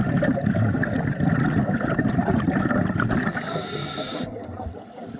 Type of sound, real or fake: real